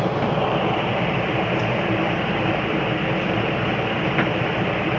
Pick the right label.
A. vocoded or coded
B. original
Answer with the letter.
A